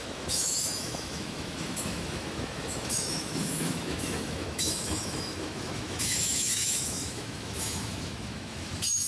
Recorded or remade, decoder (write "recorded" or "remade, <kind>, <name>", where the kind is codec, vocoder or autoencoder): remade, autoencoder, DAC-VAE